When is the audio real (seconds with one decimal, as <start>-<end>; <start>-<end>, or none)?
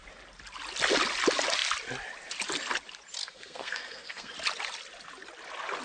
0.0-3.2; 4.3-5.8